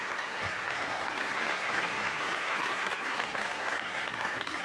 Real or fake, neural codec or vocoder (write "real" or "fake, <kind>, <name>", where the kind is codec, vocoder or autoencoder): fake, codec, SNAC